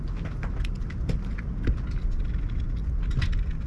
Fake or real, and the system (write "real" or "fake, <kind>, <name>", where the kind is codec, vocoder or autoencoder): real